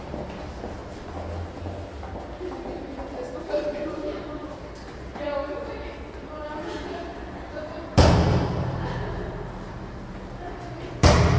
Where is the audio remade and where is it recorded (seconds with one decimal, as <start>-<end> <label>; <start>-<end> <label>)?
0.0-0.8 remade; 0.8-3.4 recorded; 3.4-5.1 remade; 5.1-5.7 recorded; 5.7-11.4 remade